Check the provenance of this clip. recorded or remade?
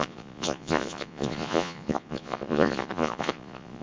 remade